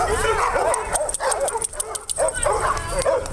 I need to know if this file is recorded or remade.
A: recorded